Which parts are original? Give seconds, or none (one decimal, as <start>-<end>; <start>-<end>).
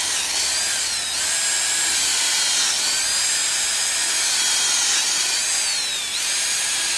0.0-7.0